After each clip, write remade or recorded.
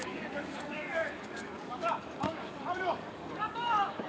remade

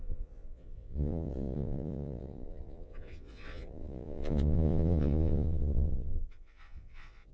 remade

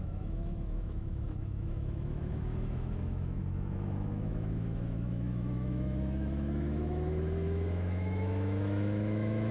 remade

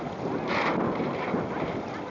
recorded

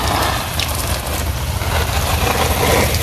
recorded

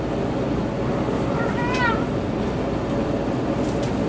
recorded